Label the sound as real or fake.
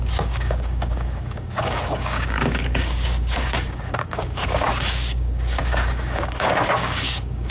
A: fake